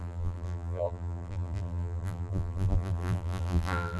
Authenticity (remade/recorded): remade